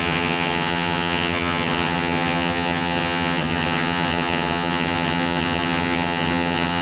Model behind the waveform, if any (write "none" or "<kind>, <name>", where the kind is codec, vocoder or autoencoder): vocoder, HiFi-GAN